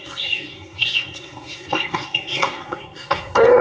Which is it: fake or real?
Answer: fake